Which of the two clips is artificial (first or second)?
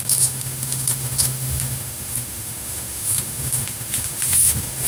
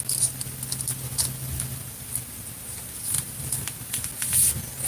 first